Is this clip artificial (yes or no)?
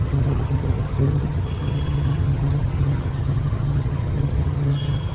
yes